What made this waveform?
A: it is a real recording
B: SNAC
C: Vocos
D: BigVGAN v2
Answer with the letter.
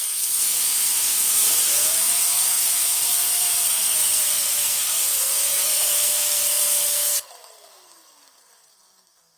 B